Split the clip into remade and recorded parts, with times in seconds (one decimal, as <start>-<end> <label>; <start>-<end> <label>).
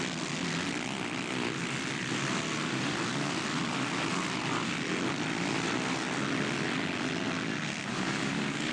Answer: 0.0-7.9 recorded; 7.9-8.7 remade